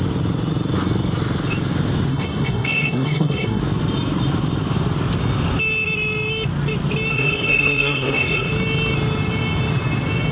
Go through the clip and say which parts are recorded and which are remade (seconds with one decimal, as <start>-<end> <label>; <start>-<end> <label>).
0.0-2.1 recorded; 2.1-3.6 remade; 3.6-7.1 recorded; 7.1-8.5 remade; 8.5-10.3 recorded